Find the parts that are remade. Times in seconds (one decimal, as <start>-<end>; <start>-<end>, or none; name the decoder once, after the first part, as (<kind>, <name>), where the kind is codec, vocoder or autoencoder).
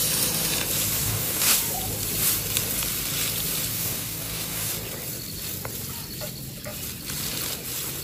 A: 1.0-1.6 (codec, DAC); 3.7-4.7